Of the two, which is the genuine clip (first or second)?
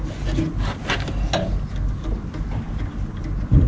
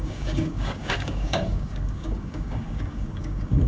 first